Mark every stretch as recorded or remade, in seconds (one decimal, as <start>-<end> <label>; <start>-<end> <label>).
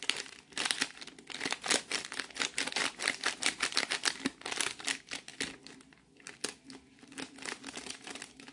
0.0-8.5 recorded